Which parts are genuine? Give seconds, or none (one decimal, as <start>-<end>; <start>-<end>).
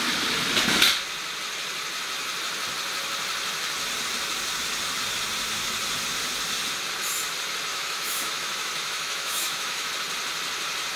0.0-7.7; 9.9-11.0